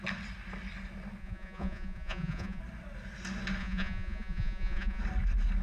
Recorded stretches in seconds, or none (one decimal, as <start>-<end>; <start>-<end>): 0.0-1.2; 2.6-3.6; 5.0-5.6